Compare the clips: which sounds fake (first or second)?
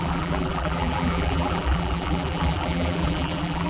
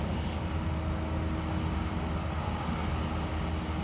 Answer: first